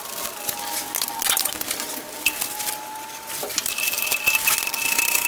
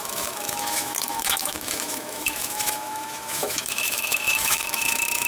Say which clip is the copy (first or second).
second